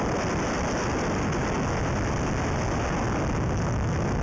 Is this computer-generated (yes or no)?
no